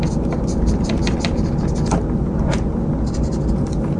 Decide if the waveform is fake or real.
real